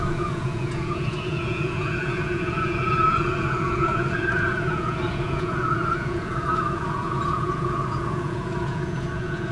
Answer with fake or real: fake